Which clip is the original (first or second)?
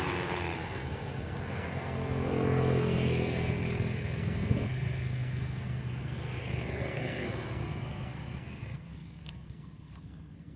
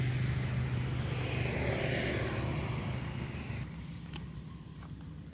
second